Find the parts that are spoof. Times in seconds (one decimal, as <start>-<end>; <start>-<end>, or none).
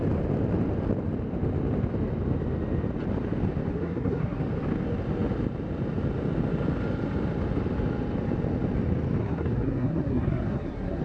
3.7-4.4; 9.2-11.0